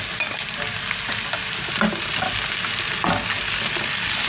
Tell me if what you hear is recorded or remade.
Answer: recorded